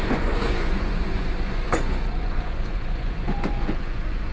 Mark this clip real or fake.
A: fake